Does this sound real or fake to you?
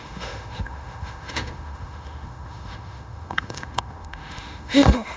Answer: fake